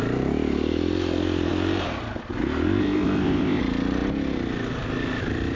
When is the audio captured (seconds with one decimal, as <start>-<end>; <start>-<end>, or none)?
0.0-2.8; 3.6-5.6